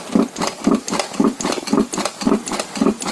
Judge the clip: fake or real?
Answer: real